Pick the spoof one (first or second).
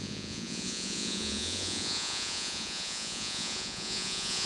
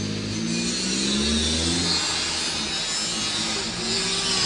first